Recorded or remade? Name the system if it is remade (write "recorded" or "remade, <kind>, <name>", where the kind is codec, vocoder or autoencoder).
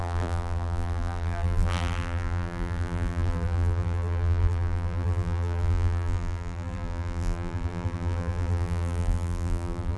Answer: remade, vocoder, BigVGAN v2